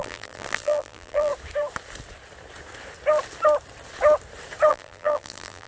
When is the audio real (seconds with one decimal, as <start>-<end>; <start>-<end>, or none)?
1.3-4.7